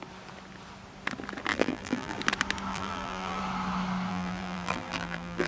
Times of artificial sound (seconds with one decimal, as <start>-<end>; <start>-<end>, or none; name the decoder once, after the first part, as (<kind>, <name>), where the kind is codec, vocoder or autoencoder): 1.5-2.2 (vocoder, BigVGAN v2); 2.7-3.4; 4.1-5.5